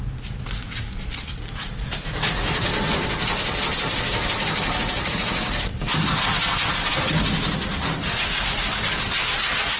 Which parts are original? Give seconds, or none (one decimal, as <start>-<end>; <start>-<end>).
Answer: 0.0-5.7; 6.2-9.8